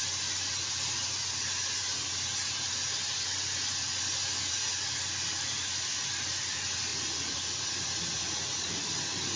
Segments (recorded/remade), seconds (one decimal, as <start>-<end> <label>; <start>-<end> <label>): 0.0-6.9 recorded; 6.9-8.7 remade; 8.7-9.4 recorded